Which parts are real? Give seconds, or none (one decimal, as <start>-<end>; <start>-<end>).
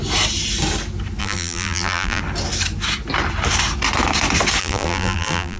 0.0-1.2; 2.2-4.6